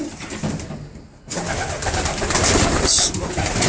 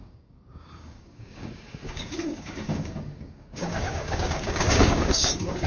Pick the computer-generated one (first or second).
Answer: second